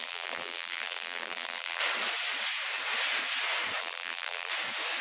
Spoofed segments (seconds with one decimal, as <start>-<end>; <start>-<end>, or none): 0.0-1.8; 3.8-4.5